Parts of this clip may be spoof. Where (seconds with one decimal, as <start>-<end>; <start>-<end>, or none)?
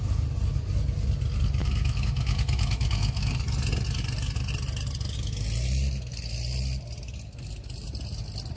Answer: 1.6-3.4